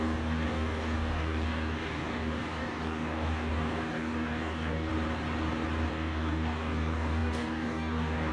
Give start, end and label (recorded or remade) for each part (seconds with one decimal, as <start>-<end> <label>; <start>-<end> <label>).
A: 0.0-4.9 remade; 4.9-5.9 recorded; 5.9-8.3 remade